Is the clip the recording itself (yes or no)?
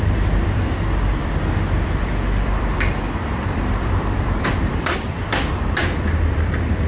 no